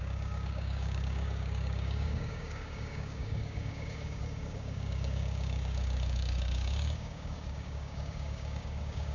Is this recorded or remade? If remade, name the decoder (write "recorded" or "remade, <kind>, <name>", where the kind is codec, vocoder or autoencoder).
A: remade, codec, DAC